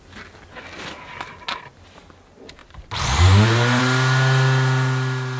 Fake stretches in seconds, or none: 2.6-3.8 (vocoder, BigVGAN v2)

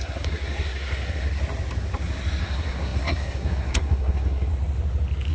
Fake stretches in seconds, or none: 0.0-1.4 (codec, SNAC); 2.4-4.5

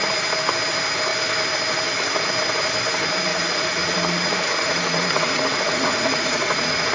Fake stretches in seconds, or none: 3.3-6.9 (vocoder, Vocos)

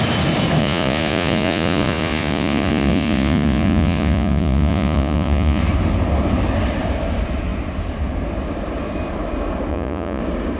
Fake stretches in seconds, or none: 0.6-5.6 (vocoder, Vocos); 9.7-10.2

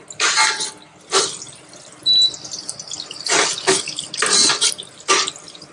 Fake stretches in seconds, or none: none

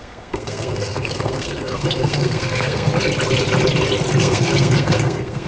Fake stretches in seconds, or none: 0.0-2.9 (codec, SNAC); 4.2-5.5

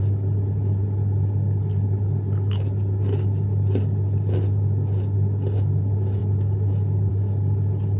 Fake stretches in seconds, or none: none